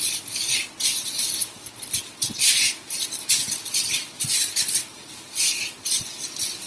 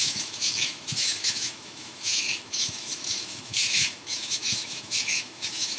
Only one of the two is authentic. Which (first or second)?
first